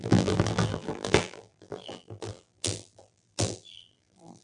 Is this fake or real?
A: fake